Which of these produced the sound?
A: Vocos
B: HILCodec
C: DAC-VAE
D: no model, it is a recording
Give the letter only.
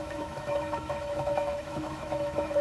C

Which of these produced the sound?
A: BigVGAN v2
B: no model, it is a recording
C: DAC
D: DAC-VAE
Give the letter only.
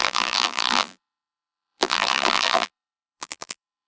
A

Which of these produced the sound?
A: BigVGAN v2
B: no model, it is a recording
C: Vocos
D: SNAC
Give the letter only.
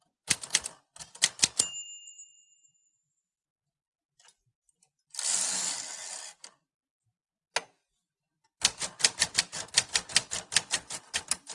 B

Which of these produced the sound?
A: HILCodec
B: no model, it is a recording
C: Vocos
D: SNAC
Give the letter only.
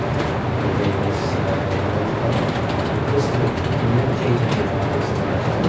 B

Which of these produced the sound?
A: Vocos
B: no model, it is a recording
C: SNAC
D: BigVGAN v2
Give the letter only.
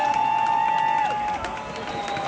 B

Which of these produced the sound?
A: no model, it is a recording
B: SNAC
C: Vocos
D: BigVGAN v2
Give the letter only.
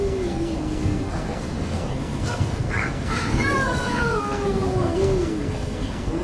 B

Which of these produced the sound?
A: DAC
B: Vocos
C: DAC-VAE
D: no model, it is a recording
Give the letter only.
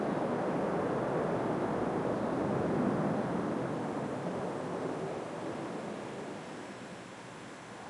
D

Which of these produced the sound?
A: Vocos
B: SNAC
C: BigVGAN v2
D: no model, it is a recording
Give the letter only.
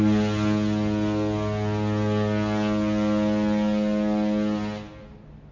D